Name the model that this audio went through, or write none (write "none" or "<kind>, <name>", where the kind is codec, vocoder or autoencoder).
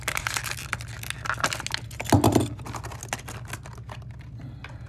none